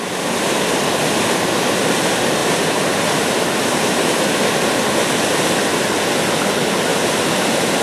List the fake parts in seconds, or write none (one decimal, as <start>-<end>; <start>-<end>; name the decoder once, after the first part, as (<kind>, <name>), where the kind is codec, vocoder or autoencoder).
2.4-5.0 (vocoder, BigVGAN v2); 6.9-7.8